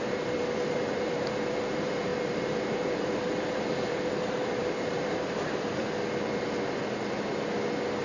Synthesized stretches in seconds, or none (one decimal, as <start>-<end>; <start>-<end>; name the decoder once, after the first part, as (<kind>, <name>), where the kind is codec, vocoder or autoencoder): 0.0-5.8 (vocoder, BigVGAN v2)